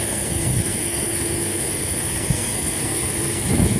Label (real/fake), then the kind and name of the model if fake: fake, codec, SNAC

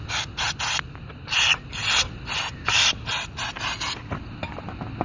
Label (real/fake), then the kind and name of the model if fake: real